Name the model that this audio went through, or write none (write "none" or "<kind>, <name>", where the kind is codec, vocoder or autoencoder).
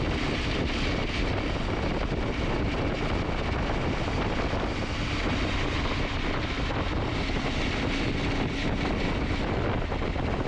none